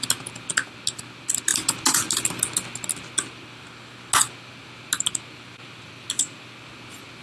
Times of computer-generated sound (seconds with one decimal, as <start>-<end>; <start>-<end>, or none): none